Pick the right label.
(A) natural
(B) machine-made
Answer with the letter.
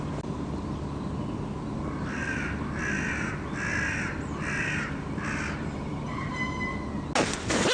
A